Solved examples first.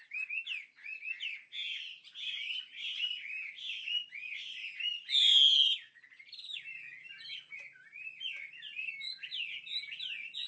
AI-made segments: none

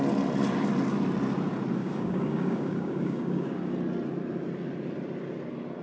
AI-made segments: 1.8-3.7 (codec, DAC)

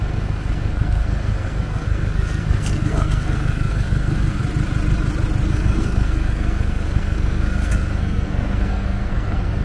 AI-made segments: 0.0-4.4 (codec, SNAC); 5.5-9.6

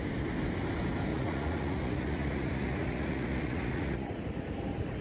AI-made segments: 1.1-4.1 (vocoder, Vocos)

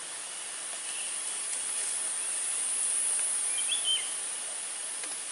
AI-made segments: 1.1-3.9 (vocoder, BigVGAN v2)

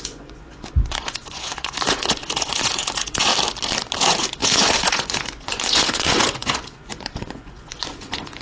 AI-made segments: 0.0-3.3 (vocoder, Vocos); 4.0-8.4

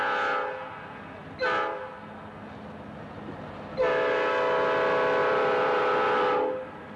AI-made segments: 5.2-5.8 (vocoder, BigVGAN v2)